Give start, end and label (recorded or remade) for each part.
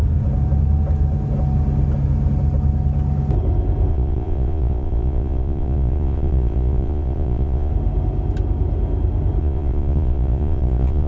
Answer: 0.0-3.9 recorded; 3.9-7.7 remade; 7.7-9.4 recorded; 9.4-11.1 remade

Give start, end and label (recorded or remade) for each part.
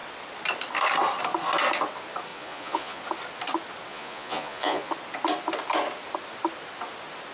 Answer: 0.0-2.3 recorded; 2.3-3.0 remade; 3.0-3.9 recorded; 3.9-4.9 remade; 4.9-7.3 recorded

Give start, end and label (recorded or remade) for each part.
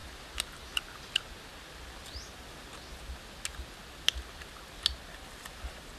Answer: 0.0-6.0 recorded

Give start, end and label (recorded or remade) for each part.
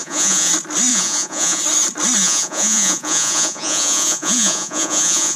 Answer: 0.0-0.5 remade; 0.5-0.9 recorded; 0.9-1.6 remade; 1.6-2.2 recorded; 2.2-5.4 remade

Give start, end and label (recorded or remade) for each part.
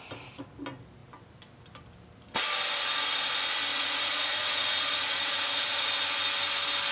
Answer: 0.0-3.7 recorded; 3.7-5.9 remade; 5.9-6.9 recorded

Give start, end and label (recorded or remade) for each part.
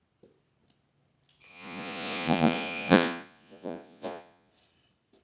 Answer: 0.0-1.5 recorded; 1.5-4.5 remade; 4.5-5.2 recorded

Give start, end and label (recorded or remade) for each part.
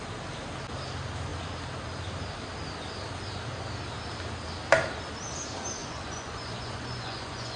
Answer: 0.0-5.8 recorded; 5.8-7.6 remade